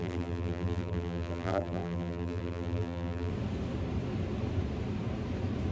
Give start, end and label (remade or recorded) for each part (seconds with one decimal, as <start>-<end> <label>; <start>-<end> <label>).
0.0-3.3 remade; 3.3-5.7 recorded